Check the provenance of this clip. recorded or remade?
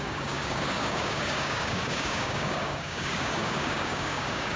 remade